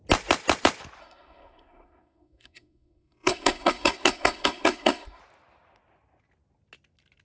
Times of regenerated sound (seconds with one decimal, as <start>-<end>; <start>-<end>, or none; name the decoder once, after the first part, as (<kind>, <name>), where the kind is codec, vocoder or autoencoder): 1.0-5.2 (codec, SNAC)